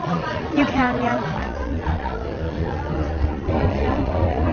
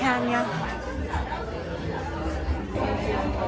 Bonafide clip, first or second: second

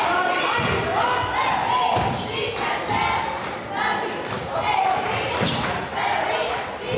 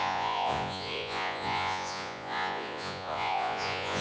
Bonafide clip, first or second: first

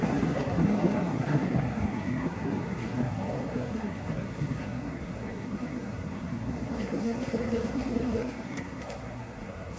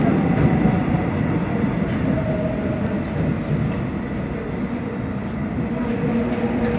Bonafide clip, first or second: second